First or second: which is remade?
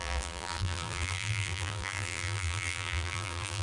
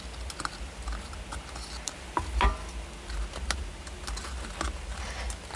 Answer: first